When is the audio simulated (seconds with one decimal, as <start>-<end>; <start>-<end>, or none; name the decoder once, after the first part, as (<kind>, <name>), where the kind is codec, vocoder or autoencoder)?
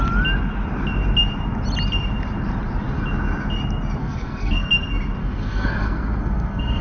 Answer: 4.0-4.7 (codec, SNAC); 5.2-6.8